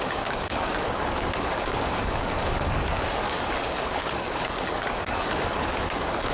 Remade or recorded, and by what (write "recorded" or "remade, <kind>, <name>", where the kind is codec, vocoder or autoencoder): remade, codec, DAC